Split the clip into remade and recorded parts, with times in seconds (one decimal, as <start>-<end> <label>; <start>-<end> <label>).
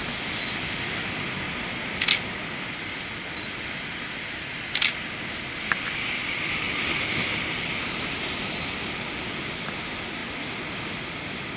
0.0-11.6 recorded